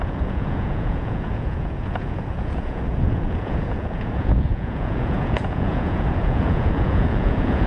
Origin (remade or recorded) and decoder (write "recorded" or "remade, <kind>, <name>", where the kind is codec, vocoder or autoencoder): remade, vocoder, Vocos